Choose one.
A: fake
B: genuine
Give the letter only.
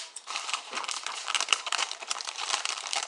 A